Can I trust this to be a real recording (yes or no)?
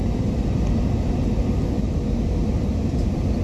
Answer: yes